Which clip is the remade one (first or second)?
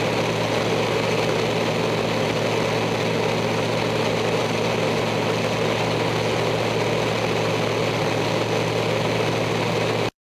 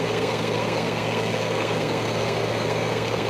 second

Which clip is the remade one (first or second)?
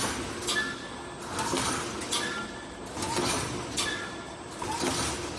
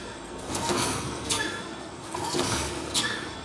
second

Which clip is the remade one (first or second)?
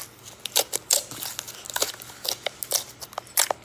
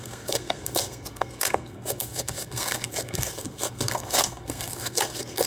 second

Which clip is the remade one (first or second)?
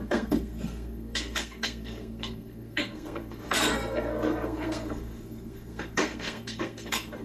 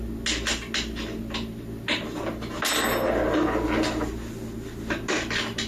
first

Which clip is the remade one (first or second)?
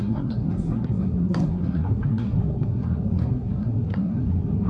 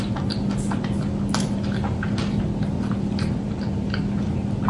first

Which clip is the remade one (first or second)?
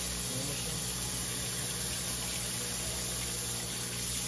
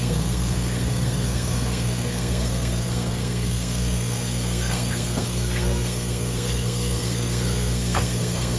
second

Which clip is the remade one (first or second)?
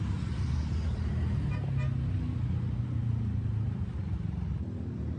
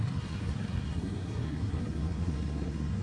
second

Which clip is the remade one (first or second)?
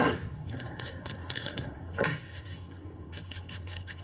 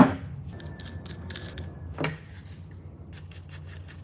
first